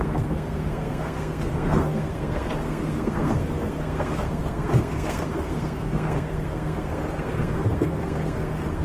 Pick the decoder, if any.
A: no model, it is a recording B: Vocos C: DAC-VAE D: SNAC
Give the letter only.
D